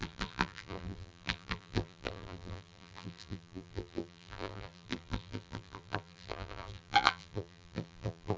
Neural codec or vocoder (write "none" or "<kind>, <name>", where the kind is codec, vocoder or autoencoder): vocoder, BigVGAN v2